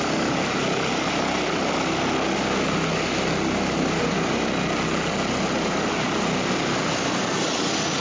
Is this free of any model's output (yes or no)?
yes